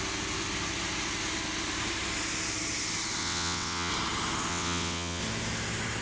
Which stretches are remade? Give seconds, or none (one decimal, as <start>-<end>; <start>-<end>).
3.2-3.9; 4.5-5.2